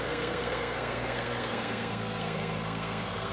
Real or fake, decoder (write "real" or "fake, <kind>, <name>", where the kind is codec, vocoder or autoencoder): fake, codec, SNAC